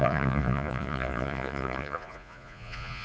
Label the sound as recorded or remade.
remade